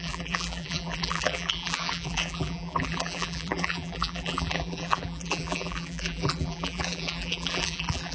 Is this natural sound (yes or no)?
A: no